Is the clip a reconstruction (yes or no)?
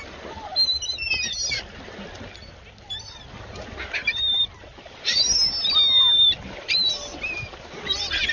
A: no